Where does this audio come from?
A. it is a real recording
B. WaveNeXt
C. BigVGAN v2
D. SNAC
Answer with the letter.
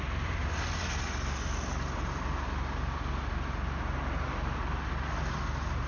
A